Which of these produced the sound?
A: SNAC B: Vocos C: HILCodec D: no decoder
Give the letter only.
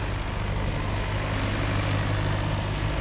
D